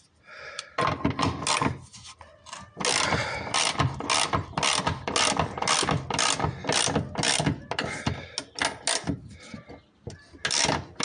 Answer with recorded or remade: recorded